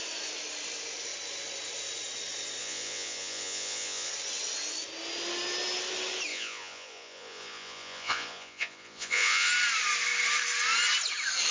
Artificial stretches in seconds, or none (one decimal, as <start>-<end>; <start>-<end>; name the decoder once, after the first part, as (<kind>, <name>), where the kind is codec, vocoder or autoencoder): 2.6-4.1 (vocoder, Vocos); 6.3-9.5